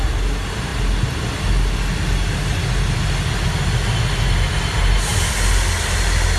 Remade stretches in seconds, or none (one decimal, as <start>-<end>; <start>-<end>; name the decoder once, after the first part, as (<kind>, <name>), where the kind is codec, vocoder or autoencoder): none